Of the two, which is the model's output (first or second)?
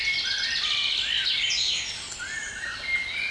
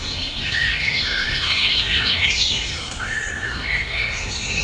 second